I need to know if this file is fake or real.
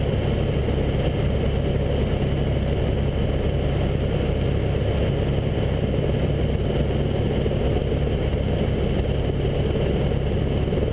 real